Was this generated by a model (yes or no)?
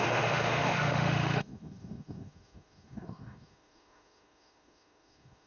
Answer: yes